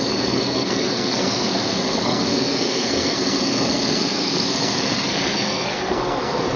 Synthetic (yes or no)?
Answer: yes